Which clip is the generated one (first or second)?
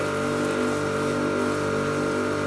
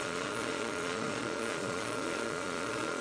second